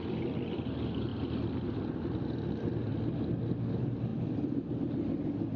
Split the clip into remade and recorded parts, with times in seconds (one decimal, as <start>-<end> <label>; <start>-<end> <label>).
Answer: 0.0-1.1 recorded; 1.1-3.4 remade; 3.4-4.1 recorded; 4.1-4.7 remade; 4.7-5.6 recorded